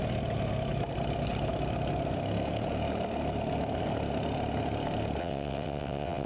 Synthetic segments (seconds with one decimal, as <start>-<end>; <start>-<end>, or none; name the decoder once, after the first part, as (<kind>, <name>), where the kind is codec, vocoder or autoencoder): 5.2-6.3 (vocoder, WaveNeXt)